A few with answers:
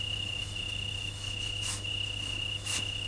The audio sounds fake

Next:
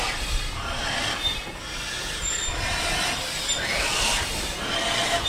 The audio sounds real